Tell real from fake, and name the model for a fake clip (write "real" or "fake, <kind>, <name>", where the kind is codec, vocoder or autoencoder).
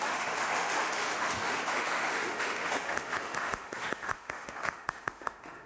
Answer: fake, autoencoder, DAC-VAE